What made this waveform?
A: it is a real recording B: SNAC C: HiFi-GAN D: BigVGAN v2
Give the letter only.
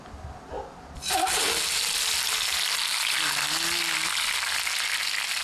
A